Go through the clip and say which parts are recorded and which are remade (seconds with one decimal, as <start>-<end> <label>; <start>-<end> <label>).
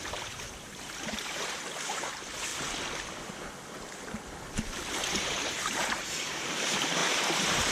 0.0-2.5 remade; 2.5-4.9 recorded; 4.9-7.7 remade